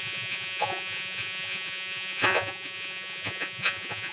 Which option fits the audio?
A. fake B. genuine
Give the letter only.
A